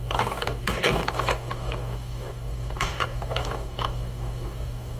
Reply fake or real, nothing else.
fake